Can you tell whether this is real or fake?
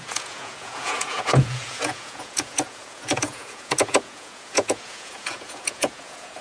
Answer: fake